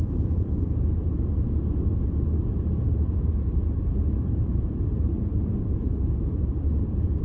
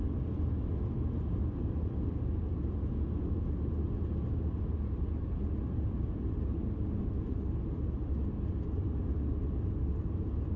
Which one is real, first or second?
second